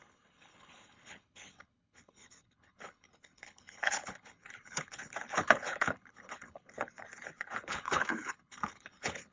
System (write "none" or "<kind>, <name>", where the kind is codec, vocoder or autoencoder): codec, HILCodec